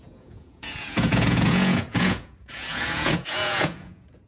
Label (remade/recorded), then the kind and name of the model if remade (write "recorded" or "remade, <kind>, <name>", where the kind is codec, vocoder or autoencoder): remade, vocoder, Vocos